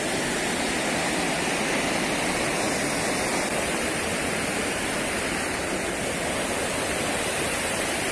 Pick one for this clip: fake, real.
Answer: real